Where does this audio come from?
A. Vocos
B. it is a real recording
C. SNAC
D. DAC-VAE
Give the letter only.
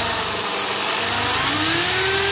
B